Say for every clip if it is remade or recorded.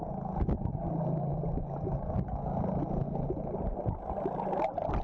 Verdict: recorded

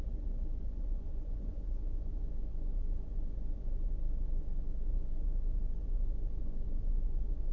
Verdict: remade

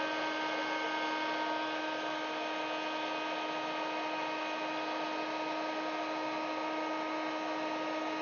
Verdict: recorded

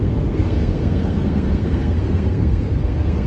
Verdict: remade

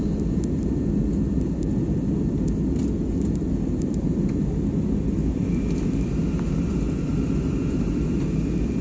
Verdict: recorded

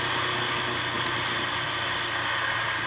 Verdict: recorded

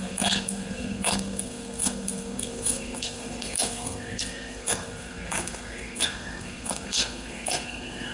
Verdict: remade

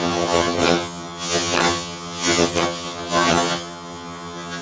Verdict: remade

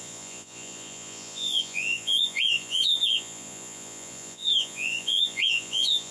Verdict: remade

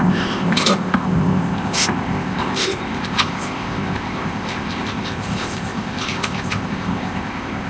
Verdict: remade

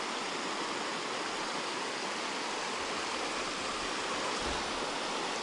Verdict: recorded